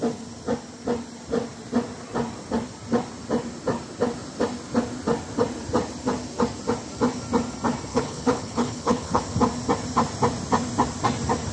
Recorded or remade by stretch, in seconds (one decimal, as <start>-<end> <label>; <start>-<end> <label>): 0.0-7.9 recorded; 7.9-9.2 remade; 9.2-11.5 recorded